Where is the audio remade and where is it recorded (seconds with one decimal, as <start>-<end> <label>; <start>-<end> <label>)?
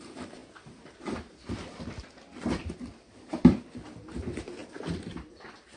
0.0-5.8 recorded